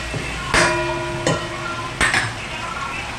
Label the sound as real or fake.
real